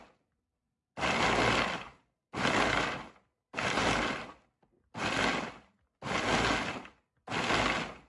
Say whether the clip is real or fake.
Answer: real